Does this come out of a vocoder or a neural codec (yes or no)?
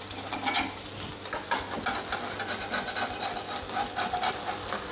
no